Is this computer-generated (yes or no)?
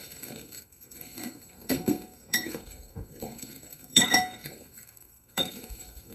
yes